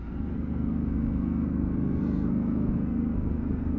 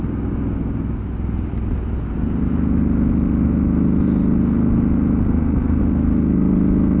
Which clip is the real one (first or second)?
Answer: second